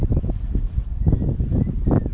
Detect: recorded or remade recorded